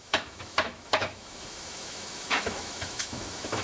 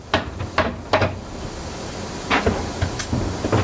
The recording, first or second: second